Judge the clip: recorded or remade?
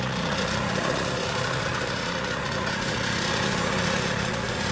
remade